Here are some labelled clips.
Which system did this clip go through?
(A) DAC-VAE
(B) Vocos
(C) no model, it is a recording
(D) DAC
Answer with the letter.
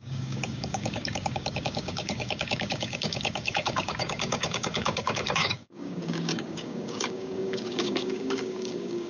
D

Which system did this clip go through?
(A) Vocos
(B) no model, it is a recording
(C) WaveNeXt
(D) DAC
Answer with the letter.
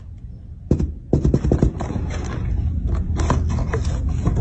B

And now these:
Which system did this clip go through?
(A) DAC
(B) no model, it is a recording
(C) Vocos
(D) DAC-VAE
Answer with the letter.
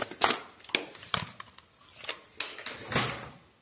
B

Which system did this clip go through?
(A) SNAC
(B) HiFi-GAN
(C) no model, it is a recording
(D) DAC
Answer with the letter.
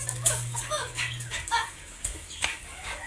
D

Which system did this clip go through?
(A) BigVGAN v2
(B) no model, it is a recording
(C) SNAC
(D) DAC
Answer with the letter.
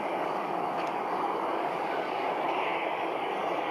D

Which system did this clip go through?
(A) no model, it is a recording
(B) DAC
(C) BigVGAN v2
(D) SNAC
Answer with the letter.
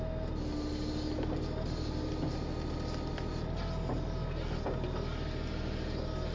A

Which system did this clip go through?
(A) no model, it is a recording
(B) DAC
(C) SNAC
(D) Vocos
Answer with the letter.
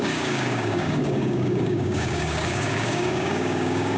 B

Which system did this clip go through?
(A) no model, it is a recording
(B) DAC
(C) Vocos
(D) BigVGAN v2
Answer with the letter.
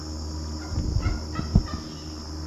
A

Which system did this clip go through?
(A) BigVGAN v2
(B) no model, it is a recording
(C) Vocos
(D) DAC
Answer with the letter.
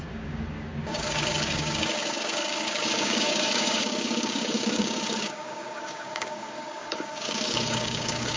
D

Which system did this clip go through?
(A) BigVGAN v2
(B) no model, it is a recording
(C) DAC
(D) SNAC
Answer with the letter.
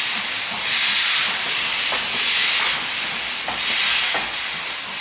B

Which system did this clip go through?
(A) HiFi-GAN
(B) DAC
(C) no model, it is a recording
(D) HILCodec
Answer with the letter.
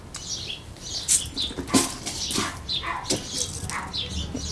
C